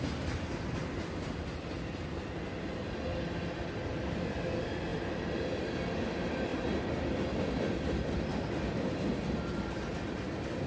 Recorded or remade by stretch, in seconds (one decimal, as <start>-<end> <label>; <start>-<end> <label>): 0.0-4.9 recorded; 4.9-5.6 remade; 5.6-10.7 recorded